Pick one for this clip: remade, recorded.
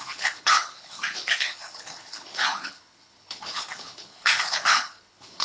remade